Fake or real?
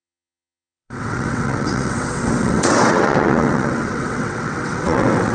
fake